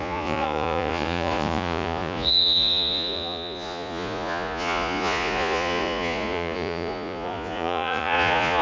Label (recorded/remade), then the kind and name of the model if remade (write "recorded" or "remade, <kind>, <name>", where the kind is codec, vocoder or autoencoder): remade, vocoder, Vocos